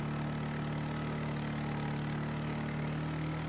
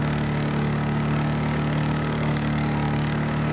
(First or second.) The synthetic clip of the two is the second